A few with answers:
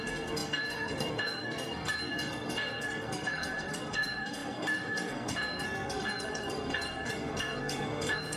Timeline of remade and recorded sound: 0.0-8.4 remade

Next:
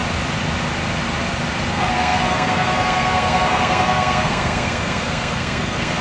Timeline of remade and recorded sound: 0.0-1.7 recorded; 1.7-6.0 remade

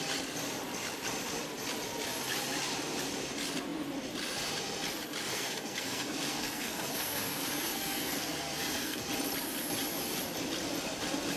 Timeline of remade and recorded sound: 0.0-5.3 recorded; 5.3-9.1 remade; 9.1-11.4 recorded

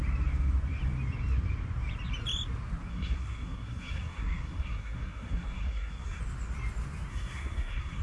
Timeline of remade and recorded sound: 0.0-2.9 recorded; 2.9-6.2 remade; 6.2-7.1 recorded; 7.1-8.0 remade

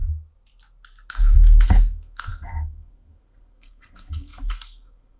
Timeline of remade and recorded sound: 0.0-1.1 recorded; 1.1-5.2 remade

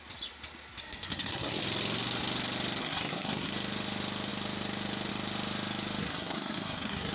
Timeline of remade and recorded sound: 0.0-0.8 recorded; 0.8-1.6 remade; 1.6-2.8 recorded; 2.8-3.5 remade; 3.5-6.0 recorded; 6.0-7.1 remade

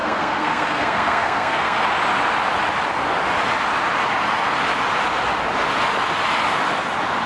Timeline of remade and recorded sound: 0.0-1.8 remade; 1.8-7.3 recorded